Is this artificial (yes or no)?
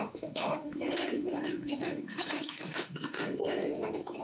yes